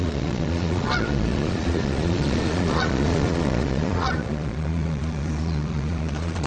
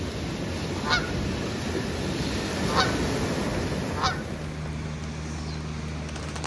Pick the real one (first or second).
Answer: second